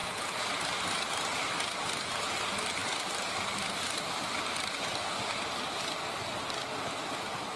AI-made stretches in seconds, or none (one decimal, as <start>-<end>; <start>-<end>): 0.0-0.6